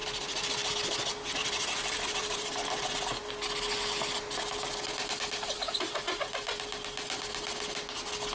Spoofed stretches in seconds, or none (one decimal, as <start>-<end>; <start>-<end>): 0.0-0.7; 1.4-3.3